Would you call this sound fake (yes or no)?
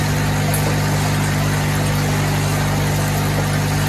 no